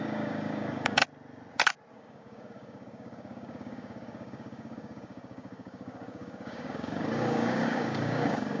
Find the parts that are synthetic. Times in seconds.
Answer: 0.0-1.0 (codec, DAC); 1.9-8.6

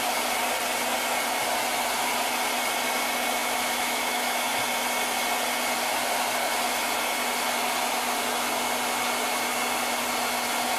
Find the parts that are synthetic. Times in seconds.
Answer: 3.4-4.6 (autoencoder, DAC-VAE)

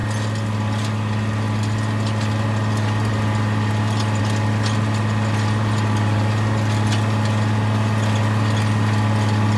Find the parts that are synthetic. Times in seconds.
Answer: none

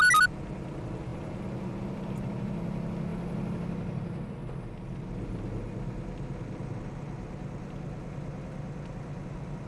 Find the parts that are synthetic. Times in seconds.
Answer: none

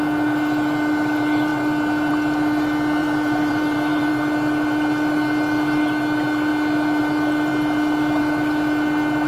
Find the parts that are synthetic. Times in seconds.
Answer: 3.0-4.1 (vocoder, BigVGAN v2)

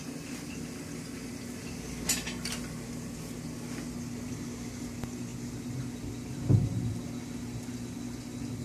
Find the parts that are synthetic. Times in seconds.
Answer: none

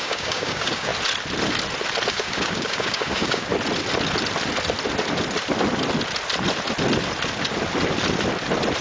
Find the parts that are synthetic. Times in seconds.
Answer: 0.0-0.9 (codec, DAC); 2.1-3.5